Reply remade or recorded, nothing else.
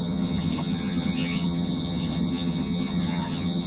remade